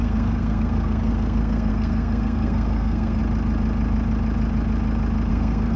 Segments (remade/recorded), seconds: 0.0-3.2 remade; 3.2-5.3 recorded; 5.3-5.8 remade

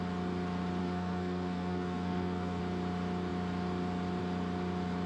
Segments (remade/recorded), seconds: 0.0-0.8 recorded; 0.8-2.6 remade; 2.6-5.1 recorded

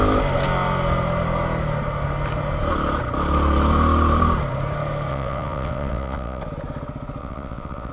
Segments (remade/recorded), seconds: 0.0-5.1 recorded; 5.1-6.4 remade; 6.4-7.2 recorded; 7.2-7.9 remade

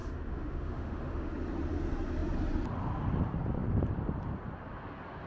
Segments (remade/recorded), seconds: 0.0-1.3 remade; 1.3-5.3 recorded

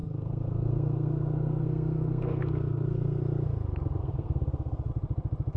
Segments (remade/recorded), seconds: 0.0-3.2 remade; 3.2-4.0 recorded; 4.0-4.9 remade; 4.9-5.6 recorded

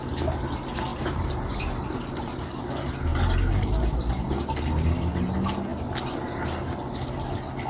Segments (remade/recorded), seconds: 0.0-0.9 recorded; 0.9-2.6 remade; 2.6-3.1 recorded; 3.1-4.4 remade; 4.4-7.7 recorded